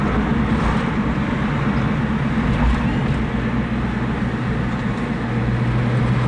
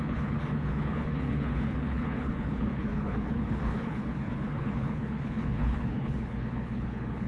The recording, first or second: first